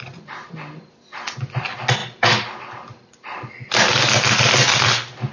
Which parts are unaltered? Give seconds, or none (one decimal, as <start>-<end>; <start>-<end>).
0.0-5.3